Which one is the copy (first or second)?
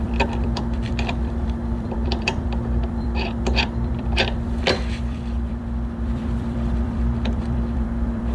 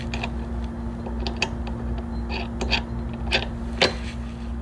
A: first